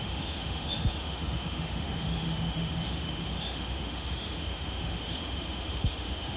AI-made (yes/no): yes